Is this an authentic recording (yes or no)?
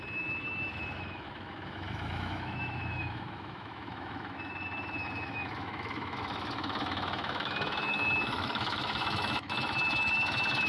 no